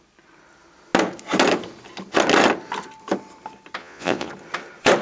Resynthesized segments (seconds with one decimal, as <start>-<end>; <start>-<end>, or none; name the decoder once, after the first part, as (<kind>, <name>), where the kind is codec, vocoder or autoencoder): 3.8-4.3 (vocoder, Vocos)